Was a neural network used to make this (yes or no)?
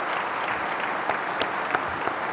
no